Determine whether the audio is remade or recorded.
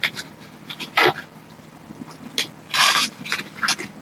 recorded